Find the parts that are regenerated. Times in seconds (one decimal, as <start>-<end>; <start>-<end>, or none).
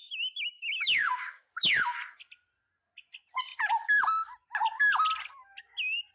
0.0-1.5